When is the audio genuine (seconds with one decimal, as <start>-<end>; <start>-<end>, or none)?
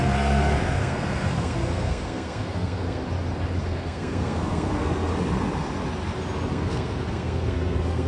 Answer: 3.0-3.6; 5.1-6.5